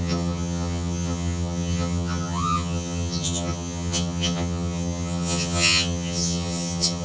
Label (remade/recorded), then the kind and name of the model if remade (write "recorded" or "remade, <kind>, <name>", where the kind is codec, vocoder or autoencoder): remade, vocoder, HiFi-GAN